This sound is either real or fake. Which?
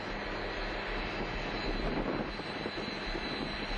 real